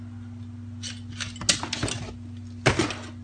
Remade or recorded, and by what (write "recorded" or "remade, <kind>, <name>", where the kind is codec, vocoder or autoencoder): recorded